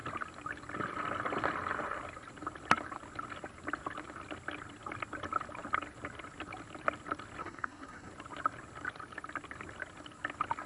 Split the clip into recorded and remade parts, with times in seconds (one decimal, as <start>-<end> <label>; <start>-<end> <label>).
0.0-7.4 recorded; 7.4-8.1 remade; 8.1-10.7 recorded